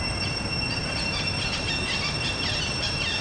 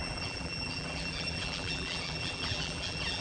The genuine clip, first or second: first